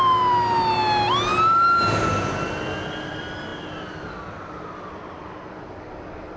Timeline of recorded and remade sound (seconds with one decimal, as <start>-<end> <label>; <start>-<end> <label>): 0.0-6.4 recorded